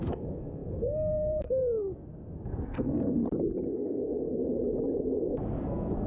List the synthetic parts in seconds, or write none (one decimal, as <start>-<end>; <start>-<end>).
0.0-3.2; 3.7-4.4; 5.6-6.1